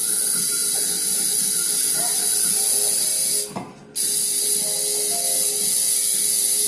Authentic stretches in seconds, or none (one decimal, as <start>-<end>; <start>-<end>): 0.0-6.7